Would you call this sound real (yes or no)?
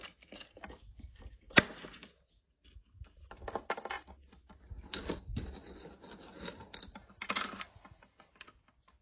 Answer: yes